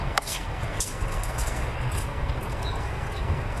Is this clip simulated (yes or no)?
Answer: yes